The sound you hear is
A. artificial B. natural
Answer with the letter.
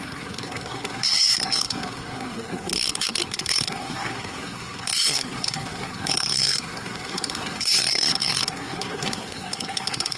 A